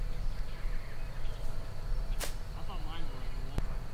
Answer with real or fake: real